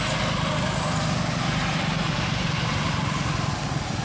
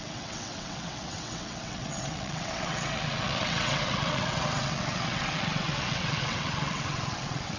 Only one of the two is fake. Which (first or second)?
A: second